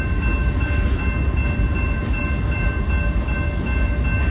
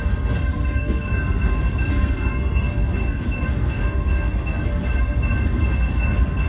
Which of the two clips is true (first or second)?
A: first